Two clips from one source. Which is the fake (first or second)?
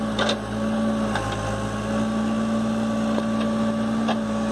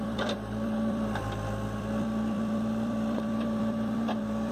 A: second